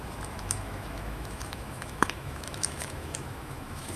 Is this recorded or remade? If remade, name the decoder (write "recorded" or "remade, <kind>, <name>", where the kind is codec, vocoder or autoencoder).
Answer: remade, autoencoder, DAC-VAE